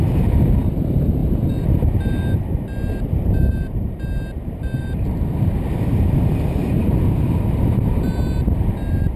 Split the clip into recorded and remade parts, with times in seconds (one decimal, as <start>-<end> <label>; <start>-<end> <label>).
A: 0.0-9.2 remade